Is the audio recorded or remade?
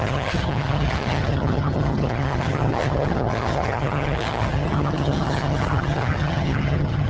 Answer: remade